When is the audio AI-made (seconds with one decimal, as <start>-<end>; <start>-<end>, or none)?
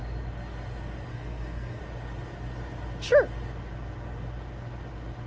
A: 1.1-1.8